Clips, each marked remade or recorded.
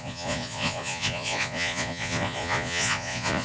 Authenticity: remade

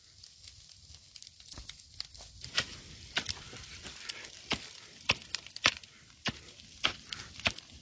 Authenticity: recorded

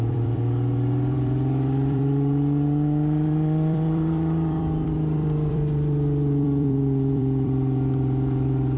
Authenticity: remade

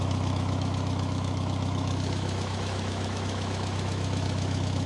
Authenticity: remade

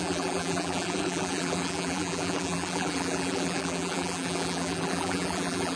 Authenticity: remade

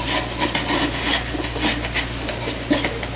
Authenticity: recorded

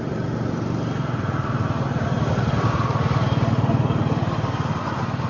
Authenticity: recorded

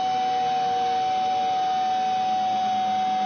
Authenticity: recorded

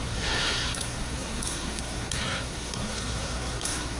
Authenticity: remade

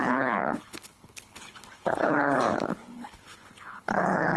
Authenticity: remade